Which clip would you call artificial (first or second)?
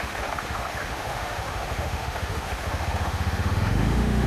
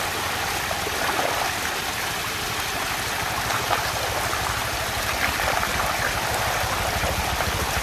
first